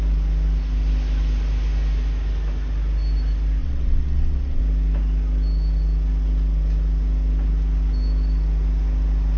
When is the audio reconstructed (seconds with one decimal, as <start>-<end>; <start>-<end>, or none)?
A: 3.6-4.6